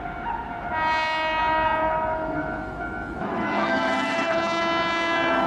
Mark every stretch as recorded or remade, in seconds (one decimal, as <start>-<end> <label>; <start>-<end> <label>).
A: 0.0-1.8 recorded; 1.8-4.6 remade; 4.6-5.5 recorded